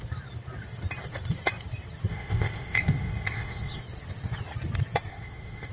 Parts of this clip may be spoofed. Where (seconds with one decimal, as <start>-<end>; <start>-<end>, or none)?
2.1-3.8; 5.1-5.7